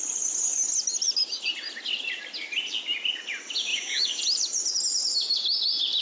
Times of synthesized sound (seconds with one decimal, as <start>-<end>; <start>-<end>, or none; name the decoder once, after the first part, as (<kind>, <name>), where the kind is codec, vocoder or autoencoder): 3.7-4.2 (codec, DAC)